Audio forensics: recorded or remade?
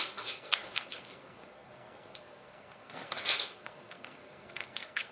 remade